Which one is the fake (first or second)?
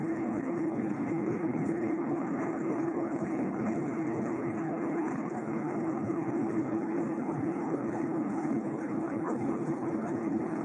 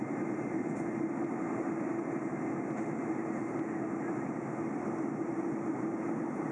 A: first